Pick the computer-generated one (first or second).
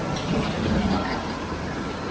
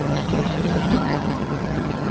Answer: second